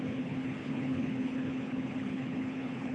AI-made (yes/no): yes